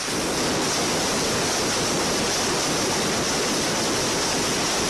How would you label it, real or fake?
real